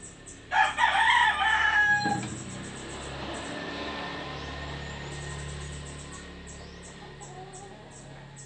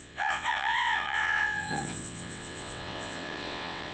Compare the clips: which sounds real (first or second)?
first